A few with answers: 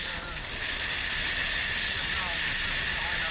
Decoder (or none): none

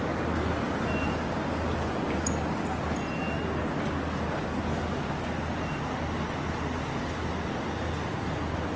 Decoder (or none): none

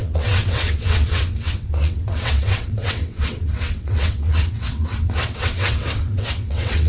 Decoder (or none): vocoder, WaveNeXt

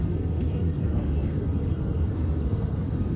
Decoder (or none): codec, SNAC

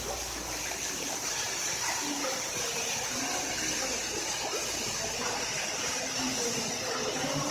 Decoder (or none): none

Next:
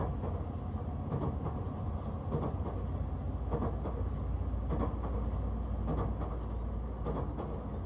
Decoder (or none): none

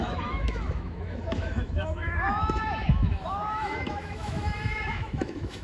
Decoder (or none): autoencoder, DAC-VAE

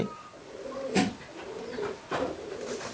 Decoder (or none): none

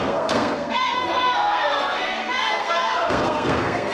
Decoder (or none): codec, SNAC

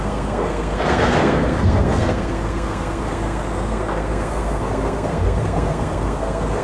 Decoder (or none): codec, SNAC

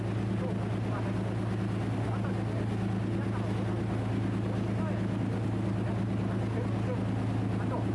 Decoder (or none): none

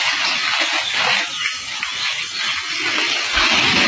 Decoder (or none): none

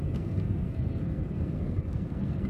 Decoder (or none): codec, SNAC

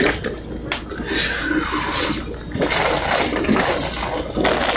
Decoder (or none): none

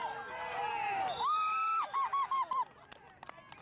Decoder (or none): none